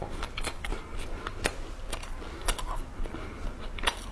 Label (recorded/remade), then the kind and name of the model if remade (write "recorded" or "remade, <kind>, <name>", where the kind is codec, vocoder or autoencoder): recorded